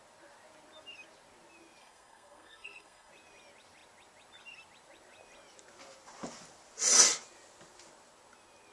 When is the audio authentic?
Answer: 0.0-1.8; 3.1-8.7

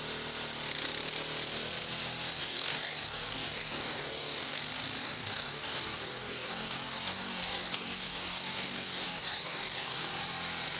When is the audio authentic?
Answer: 0.0-2.4; 4.6-5.0; 10.1-10.8

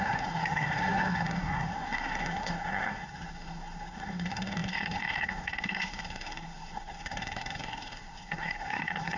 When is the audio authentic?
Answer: none

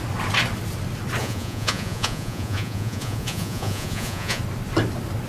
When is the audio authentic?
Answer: 0.0-1.2; 4.4-5.3

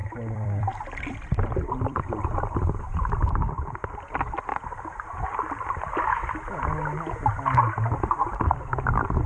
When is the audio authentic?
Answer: 2.0-9.3

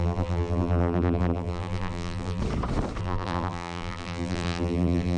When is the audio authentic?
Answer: 2.4-3.0

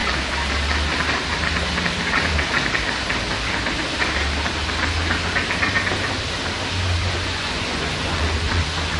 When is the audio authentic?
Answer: 0.0-7.0; 8.6-9.0

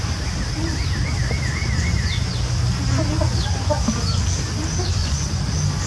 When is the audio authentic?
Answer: 0.0-5.0; 5.5-5.9